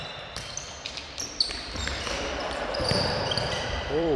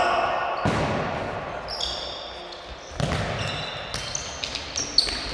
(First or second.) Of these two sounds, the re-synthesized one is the first